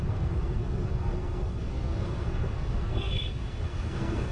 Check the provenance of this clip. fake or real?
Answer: fake